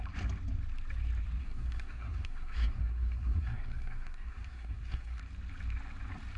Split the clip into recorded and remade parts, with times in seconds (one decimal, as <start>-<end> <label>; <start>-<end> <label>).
0.0-1.4 recorded; 1.4-5.2 remade; 5.2-6.4 recorded